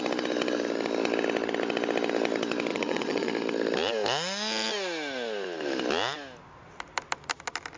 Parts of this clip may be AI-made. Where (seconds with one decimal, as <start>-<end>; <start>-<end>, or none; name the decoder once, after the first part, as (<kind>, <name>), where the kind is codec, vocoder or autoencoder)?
2.7-3.3 (vocoder, Vocos)